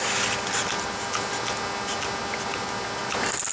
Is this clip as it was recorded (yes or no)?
yes